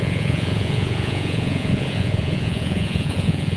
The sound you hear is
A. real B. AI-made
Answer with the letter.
B